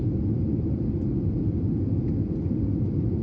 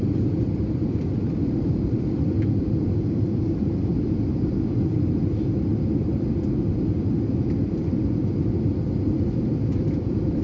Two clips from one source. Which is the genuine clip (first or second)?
first